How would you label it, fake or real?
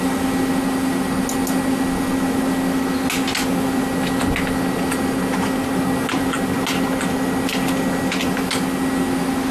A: real